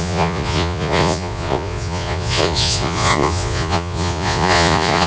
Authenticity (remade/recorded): remade